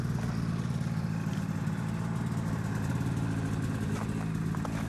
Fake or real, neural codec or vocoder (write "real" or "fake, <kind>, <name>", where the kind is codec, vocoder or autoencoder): real